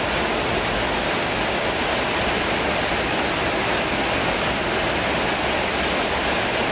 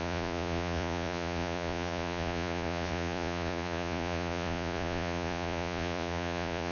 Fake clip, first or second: second